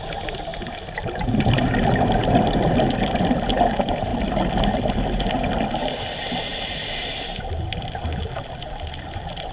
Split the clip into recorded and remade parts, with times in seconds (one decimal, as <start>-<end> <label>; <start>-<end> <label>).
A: 0.0-6.5 recorded; 6.5-7.8 remade; 7.8-9.5 recorded